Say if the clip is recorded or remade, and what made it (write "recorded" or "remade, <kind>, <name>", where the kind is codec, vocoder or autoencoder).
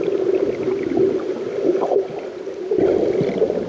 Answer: recorded